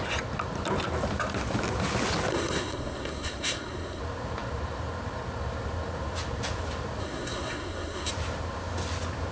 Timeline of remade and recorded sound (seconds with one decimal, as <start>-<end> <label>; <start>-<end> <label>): 0.0-2.3 recorded; 2.3-4.0 remade; 4.0-7.0 recorded; 7.0-8.1 remade; 8.1-9.3 recorded

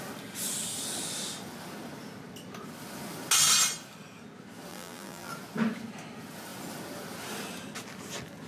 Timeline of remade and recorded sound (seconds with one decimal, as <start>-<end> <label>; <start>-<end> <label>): 0.0-4.7 recorded; 4.7-5.3 remade; 5.3-8.5 recorded

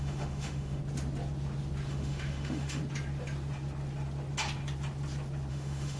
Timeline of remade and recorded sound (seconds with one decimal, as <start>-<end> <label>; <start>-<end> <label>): 0.0-0.8 remade; 0.8-1.9 recorded; 1.9-2.8 remade; 2.8-5.5 recorded; 5.5-6.0 remade

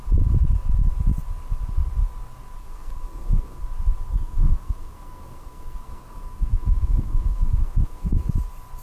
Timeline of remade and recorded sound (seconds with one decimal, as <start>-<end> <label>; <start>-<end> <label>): 0.0-2.6 recorded; 2.6-3.6 remade; 3.6-4.1 recorded; 4.1-8.3 remade; 8.3-8.8 recorded

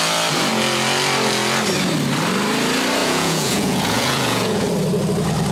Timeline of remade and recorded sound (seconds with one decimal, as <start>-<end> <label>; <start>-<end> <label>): 0.0-3.0 recorded; 3.0-4.7 remade; 4.7-5.5 recorded

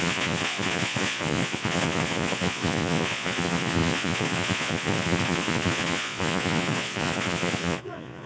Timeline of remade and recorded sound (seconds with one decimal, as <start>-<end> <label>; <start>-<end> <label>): 0.0-8.3 remade

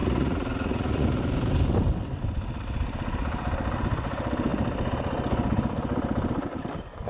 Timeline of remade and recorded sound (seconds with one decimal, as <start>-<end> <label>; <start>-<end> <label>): 0.0-1.2 remade; 1.2-7.1 recorded

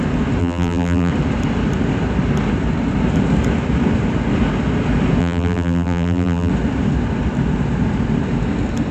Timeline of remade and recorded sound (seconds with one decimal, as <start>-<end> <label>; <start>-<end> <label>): 0.0-0.4 recorded; 0.4-1.1 remade; 1.1-5.2 recorded; 5.2-6.5 remade; 6.5-8.9 recorded